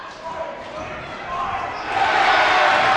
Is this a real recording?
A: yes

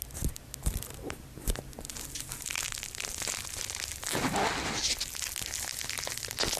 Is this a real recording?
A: yes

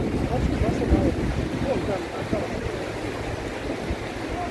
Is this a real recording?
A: yes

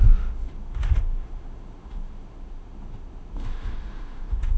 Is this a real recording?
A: no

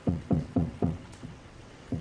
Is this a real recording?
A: no